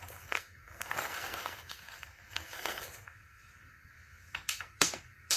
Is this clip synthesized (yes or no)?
yes